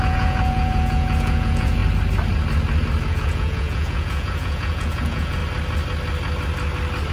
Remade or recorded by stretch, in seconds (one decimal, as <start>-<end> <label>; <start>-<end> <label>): 0.0-1.8 remade; 1.8-3.1 recorded; 3.1-5.4 remade; 5.4-7.1 recorded